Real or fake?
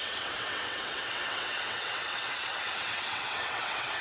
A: fake